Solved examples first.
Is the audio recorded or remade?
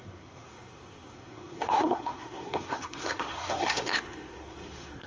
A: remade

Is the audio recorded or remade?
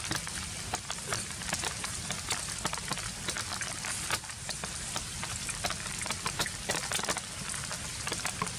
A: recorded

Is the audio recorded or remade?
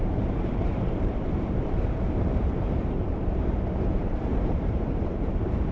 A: remade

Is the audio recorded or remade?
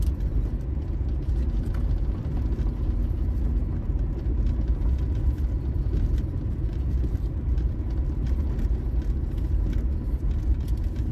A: recorded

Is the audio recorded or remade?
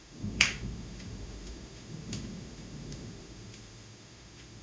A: remade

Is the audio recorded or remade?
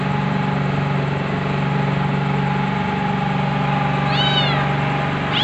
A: recorded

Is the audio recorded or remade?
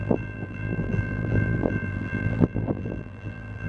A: remade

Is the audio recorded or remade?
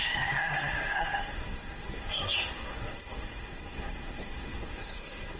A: remade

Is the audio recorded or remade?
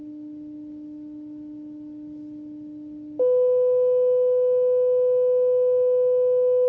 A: recorded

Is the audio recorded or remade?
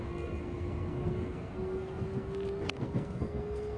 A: remade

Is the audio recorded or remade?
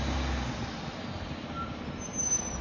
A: recorded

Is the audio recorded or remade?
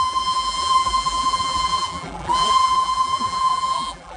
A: remade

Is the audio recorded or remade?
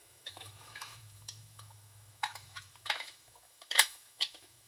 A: remade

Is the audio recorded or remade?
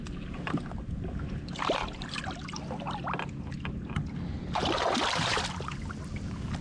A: recorded